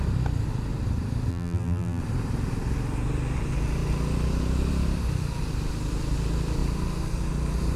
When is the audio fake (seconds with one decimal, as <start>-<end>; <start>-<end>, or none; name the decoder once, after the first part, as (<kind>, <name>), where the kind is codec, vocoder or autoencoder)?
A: 1.3-2.0 (vocoder, BigVGAN v2)

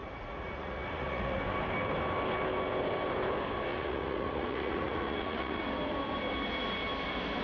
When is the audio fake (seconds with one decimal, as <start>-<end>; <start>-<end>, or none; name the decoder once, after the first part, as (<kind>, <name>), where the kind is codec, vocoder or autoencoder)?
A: 0.0-1.4 (vocoder, Vocos); 3.7-5.6

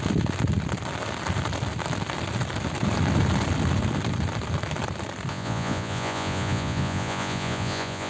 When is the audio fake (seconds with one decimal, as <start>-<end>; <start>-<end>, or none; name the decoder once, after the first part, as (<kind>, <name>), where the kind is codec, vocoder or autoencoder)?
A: 5.3-8.1 (vocoder, Vocos)

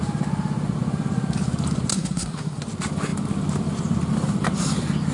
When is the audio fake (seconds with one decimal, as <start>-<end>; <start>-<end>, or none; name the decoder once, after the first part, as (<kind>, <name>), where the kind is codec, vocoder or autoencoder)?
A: 1.9-2.6 (codec, SNAC)

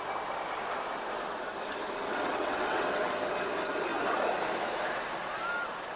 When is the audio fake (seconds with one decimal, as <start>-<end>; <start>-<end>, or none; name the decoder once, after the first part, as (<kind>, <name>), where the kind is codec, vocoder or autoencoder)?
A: 2.0-3.1 (vocoder, WaveNeXt)

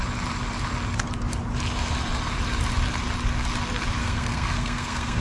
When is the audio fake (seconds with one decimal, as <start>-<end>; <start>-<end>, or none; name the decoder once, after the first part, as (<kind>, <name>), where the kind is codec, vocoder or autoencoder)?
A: 4.0-5.2 (codec, SNAC)

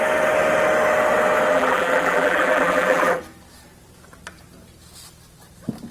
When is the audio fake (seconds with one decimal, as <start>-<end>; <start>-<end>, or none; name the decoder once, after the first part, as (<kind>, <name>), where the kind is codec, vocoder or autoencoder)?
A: 1.5-3.2 (vocoder, BigVGAN v2)

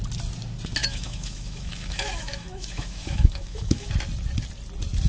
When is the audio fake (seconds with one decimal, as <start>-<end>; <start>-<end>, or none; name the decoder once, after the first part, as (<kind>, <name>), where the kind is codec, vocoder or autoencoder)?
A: 0.8-3.9 (autoencoder, DAC-VAE)